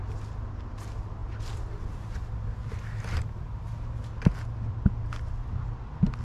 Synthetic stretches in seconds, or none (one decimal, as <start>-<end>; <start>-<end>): none